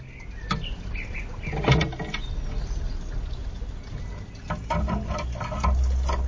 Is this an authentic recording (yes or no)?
yes